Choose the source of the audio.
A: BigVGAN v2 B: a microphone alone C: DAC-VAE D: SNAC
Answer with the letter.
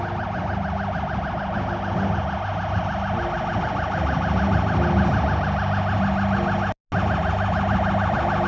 B